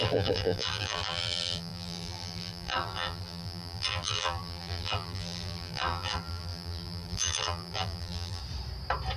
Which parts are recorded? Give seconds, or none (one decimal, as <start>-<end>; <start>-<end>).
8.4-9.2